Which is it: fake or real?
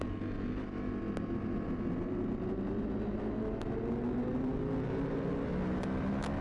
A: real